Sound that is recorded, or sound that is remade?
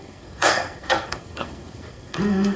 remade